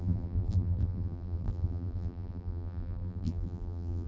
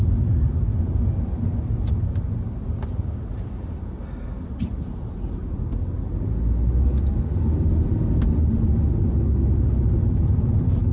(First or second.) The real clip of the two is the second